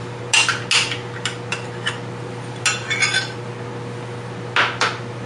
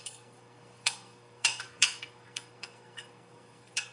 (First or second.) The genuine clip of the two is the first